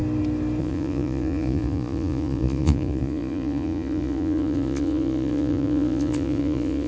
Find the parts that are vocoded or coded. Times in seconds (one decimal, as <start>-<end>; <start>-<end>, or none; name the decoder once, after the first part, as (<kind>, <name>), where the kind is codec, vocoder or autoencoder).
0.6-6.9 (vocoder, Vocos)